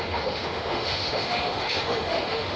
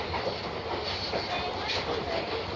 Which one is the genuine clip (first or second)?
second